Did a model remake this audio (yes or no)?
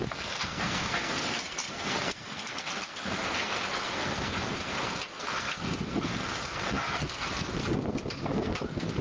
yes